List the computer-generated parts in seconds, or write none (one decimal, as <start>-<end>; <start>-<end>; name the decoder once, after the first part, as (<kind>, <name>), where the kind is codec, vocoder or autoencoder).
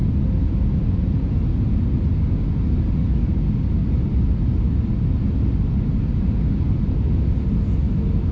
3.8-4.5 (vocoder, BigVGAN v2)